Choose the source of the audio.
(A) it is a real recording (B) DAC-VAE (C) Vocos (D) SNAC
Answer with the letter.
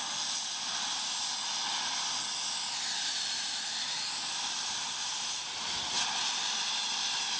A